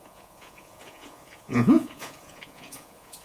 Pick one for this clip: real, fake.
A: fake